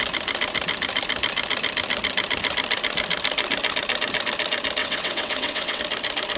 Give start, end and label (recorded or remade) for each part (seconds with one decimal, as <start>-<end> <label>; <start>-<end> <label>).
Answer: 0.0-4.8 recorded; 4.8-5.8 remade; 5.8-6.4 recorded